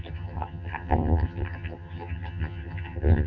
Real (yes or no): no